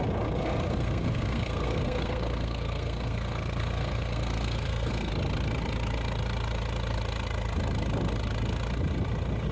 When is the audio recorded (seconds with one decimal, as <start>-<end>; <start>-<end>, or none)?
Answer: 0.0-0.7; 5.1-9.5